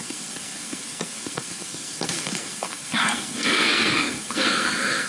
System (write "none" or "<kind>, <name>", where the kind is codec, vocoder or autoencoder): codec, SNAC